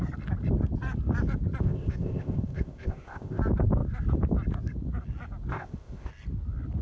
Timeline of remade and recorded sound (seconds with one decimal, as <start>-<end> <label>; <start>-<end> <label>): 0.0-1.6 recorded; 1.6-3.4 remade; 3.4-5.5 recorded; 5.5-6.1 remade; 6.1-6.8 recorded